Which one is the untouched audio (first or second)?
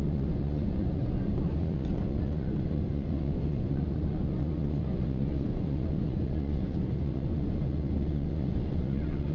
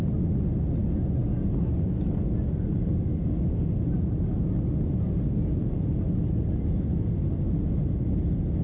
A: second